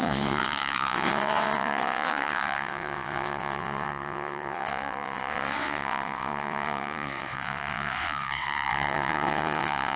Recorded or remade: remade